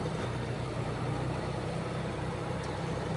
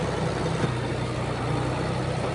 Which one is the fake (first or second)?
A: first